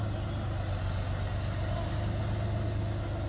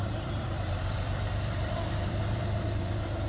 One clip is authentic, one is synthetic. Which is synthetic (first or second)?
second